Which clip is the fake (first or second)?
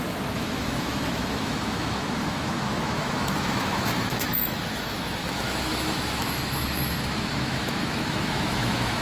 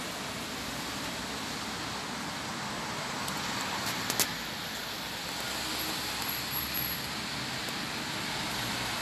first